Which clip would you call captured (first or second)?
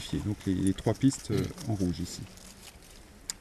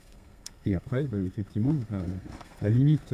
first